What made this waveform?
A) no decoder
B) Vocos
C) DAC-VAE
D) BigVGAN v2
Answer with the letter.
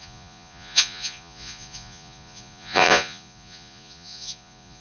B